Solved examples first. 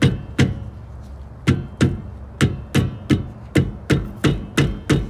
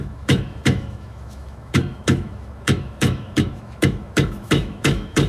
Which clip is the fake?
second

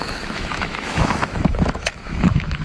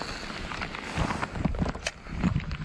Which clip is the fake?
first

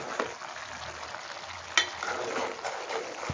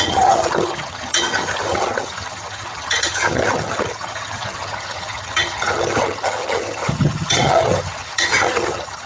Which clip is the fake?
second